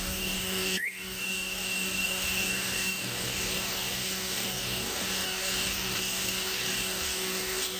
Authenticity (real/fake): fake